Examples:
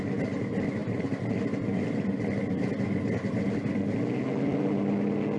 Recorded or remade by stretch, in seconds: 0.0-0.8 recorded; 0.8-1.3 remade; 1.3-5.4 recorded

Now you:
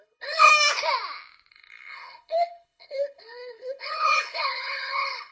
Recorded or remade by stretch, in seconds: 0.0-0.5 remade; 0.5-1.5 recorded; 1.5-5.3 remade

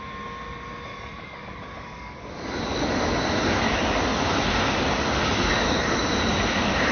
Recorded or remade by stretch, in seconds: 0.0-0.9 recorded; 0.9-2.3 remade; 2.3-6.9 recorded

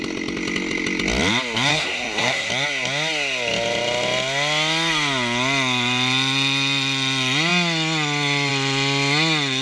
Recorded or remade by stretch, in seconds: 0.0-1.7 recorded; 1.7-2.5 remade; 2.5-9.6 recorded